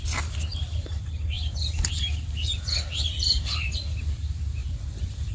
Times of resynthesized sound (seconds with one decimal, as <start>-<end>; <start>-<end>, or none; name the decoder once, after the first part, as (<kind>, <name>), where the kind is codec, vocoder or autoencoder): 4.6-5.3 (vocoder, BigVGAN v2)